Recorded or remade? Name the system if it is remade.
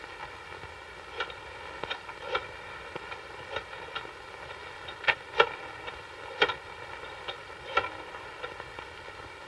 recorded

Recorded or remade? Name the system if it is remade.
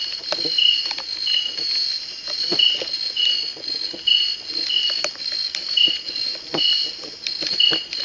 recorded